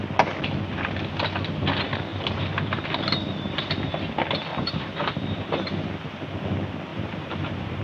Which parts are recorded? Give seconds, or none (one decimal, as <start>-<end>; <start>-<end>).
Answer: 0.0-2.1; 2.8-4.5; 5.8-6.9